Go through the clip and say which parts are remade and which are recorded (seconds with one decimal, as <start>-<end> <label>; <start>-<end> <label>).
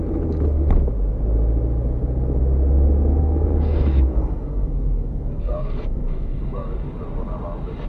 0.0-3.2 recorded; 3.2-6.7 remade; 6.7-7.9 recorded